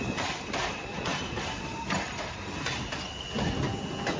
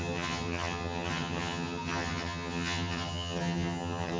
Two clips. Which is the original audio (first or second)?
first